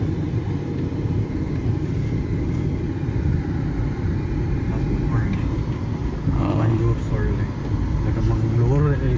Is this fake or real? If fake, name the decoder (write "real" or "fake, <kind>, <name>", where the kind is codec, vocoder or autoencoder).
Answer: real